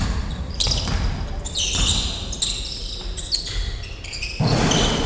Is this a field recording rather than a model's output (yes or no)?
yes